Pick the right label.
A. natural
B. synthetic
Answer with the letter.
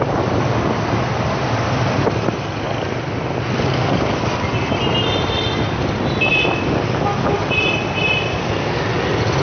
A